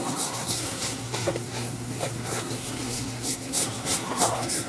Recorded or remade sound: remade